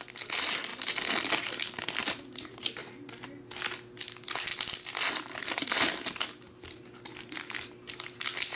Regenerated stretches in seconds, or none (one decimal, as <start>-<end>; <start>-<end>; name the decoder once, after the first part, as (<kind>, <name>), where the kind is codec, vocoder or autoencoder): none